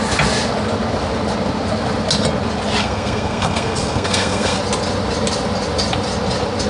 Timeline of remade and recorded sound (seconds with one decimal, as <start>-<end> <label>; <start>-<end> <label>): 0.0-2.8 recorded; 2.8-4.6 remade; 4.6-6.7 recorded